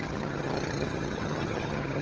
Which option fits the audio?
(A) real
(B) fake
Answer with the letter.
B